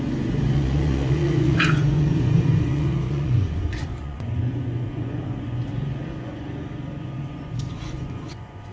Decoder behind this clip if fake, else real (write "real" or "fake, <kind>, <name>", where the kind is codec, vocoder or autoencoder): fake, vocoder, Vocos